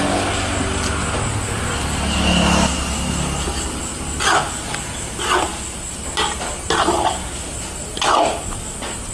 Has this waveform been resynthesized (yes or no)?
no